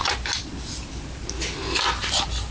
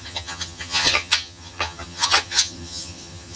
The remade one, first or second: second